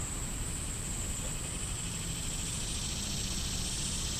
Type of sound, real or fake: real